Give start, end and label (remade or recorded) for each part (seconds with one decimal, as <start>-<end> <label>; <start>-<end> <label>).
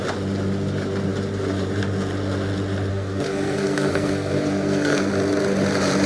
0.0-2.9 recorded; 2.9-5.1 remade; 5.1-6.1 recorded